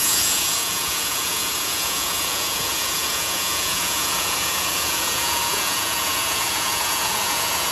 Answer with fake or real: fake